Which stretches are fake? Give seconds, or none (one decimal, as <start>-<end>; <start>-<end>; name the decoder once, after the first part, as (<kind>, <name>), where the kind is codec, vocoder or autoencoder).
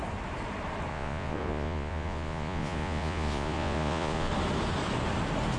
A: 0.9-4.3 (vocoder, Vocos)